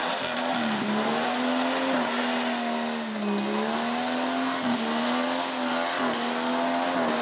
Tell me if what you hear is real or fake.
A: real